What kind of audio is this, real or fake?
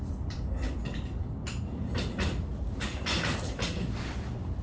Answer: real